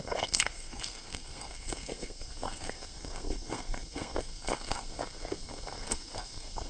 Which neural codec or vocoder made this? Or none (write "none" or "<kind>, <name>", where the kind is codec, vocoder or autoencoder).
codec, SNAC